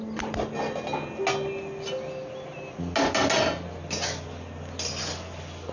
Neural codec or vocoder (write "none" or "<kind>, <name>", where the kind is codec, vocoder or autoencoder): none